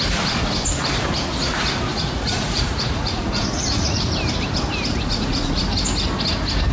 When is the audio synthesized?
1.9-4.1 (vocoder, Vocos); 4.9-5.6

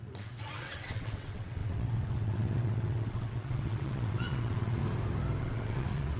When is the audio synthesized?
0.0-4.8 (vocoder, WaveNeXt); 5.4-6.2

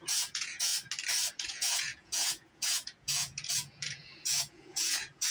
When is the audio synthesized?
0.0-0.7 (vocoder, Vocos); 1.3-5.3

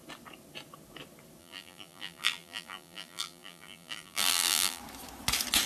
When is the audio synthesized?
1.4-4.8 (vocoder, BigVGAN v2)

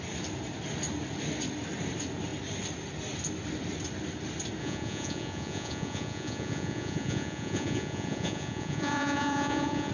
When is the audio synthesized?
4.6-9.9 (vocoder, Vocos)